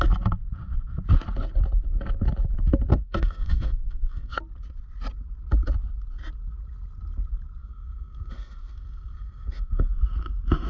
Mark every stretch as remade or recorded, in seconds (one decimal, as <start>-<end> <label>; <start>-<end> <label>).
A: 0.0-2.9 recorded; 2.9-4.4 remade; 4.4-7.6 recorded; 7.6-10.1 remade; 10.1-10.7 recorded

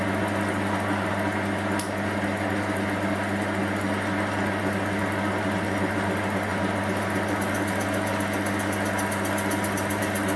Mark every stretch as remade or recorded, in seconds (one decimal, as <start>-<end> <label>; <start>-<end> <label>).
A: 0.0-10.4 recorded

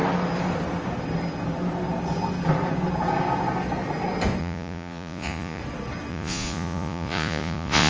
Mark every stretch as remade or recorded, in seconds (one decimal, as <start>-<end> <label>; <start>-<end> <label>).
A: 0.0-4.4 recorded; 4.4-5.6 remade; 5.6-6.1 recorded; 6.1-7.9 remade

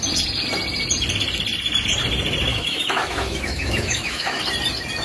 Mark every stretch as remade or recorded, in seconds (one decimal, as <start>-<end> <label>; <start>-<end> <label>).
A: 0.0-2.5 recorded; 2.5-4.4 remade; 4.4-5.0 recorded

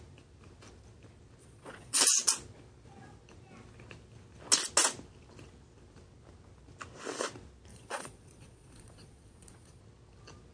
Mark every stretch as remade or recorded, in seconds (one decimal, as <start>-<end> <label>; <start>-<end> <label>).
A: 0.0-1.4 recorded; 1.4-2.0 remade; 2.0-7.7 recorded; 7.7-9.8 remade; 9.8-10.5 recorded

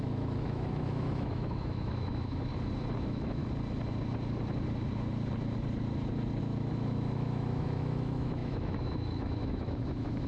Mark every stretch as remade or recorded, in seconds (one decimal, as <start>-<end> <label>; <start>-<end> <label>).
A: 0.0-2.5 remade; 2.5-3.0 recorded; 3.0-3.4 remade; 3.4-6.4 recorded; 6.4-10.3 remade

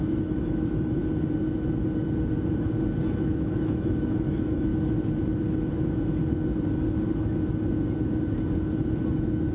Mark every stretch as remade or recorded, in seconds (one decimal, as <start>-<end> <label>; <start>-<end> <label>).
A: 0.0-1.0 remade; 1.0-3.2 recorded; 3.2-4.7 remade; 4.7-9.1 recorded; 9.1-9.5 remade

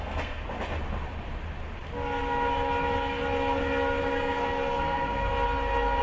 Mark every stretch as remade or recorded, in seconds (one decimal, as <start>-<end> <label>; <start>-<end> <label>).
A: 0.0-0.4 remade; 0.4-4.0 recorded; 4.0-5.3 remade; 5.3-6.0 recorded